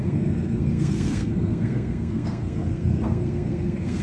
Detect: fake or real fake